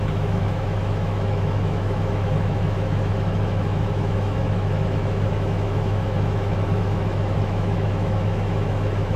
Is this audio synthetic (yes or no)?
yes